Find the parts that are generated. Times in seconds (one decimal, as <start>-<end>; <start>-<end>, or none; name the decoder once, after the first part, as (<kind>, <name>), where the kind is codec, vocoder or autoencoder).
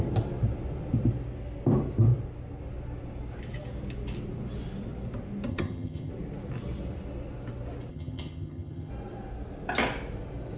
5.5-6.1 (vocoder, HiFi-GAN); 7.9-8.9